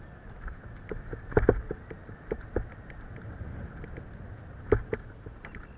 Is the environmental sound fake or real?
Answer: real